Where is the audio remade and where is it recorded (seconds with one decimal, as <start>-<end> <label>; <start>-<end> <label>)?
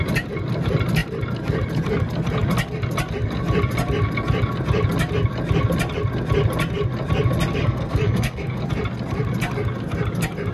0.0-7.6 recorded; 7.6-8.7 remade; 8.7-10.5 recorded